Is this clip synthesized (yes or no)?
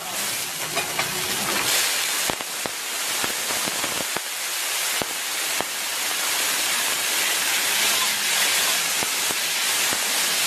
no